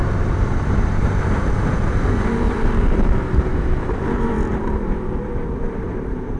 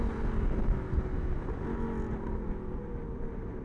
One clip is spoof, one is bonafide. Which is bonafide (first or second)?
second